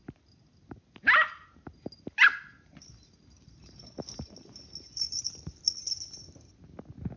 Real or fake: real